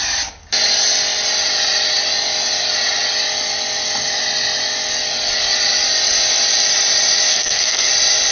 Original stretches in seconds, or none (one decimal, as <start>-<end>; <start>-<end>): 0.0-7.3; 7.9-8.3